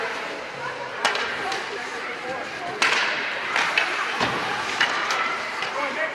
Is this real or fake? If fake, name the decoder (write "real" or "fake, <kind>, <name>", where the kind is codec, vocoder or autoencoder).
fake, vocoder, BigVGAN v2